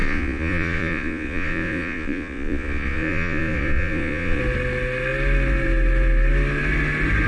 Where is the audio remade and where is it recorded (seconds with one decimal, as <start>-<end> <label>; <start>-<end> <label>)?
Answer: 0.0-4.4 remade; 4.4-7.3 recorded